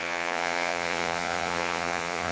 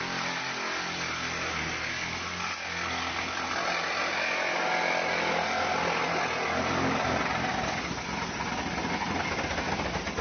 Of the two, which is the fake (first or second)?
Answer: first